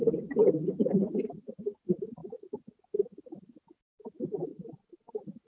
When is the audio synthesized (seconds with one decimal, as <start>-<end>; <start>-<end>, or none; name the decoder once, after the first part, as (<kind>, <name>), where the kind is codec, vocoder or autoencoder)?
4.5-5.1 (vocoder, Vocos)